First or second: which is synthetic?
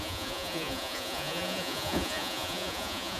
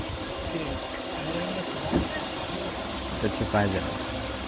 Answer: first